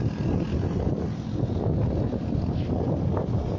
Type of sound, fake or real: real